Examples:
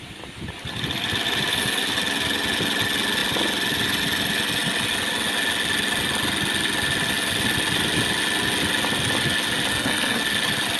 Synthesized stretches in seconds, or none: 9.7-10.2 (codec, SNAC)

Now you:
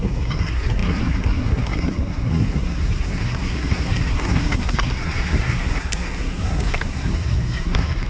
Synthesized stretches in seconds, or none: 0.0-8.1 (codec, SNAC)